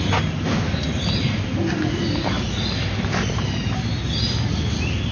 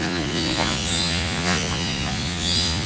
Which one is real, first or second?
first